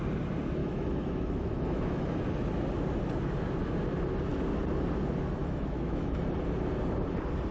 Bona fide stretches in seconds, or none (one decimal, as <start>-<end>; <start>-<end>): 0.0-0.6; 2.2-5.4; 6.2-7.5